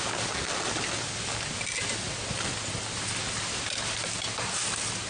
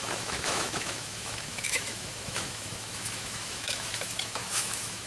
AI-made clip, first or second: second